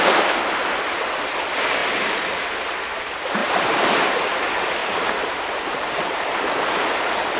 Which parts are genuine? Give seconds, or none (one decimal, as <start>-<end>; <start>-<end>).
0.0-4.8; 5.7-7.4